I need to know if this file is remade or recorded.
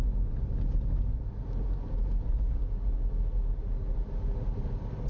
recorded